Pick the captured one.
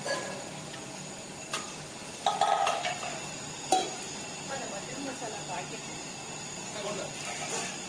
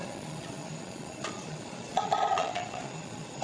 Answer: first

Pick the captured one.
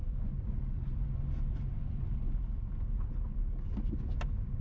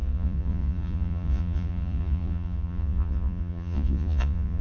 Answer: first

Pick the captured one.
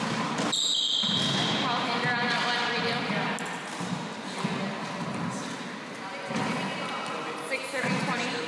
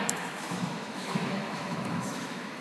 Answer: first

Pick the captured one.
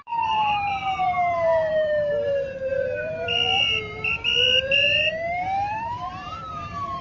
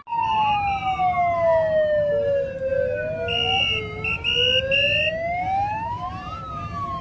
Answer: second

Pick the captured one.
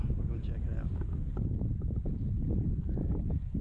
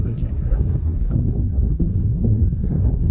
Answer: first